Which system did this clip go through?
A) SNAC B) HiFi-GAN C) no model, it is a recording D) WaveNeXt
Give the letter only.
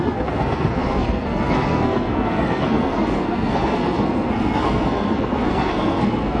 A